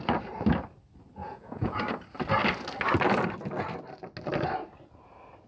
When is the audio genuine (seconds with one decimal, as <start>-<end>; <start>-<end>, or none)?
0.0-1.2; 1.8-5.5